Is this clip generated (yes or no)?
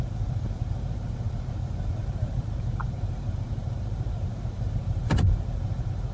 yes